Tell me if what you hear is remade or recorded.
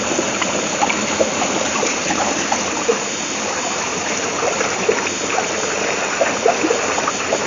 remade